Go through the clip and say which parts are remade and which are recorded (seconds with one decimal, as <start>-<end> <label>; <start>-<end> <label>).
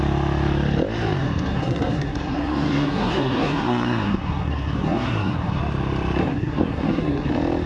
0.0-1.2 recorded; 1.2-5.6 remade; 5.6-6.2 recorded; 6.2-7.3 remade; 7.3-7.7 recorded